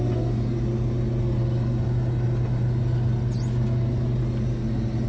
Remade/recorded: recorded